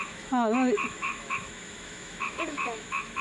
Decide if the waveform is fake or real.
fake